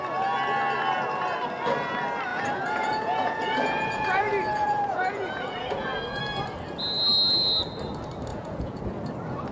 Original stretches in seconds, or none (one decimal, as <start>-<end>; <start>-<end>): 0.0-2.3; 6.2-8.3; 8.8-9.5

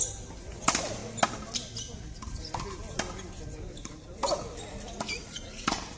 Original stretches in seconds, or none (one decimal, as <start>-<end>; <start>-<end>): 0.0-6.0